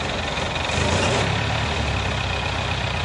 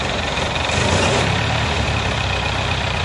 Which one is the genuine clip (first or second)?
first